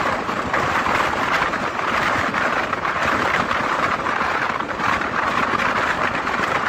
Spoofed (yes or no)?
yes